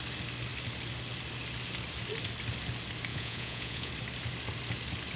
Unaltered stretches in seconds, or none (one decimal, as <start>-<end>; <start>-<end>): 0.0-3.1; 3.9-5.2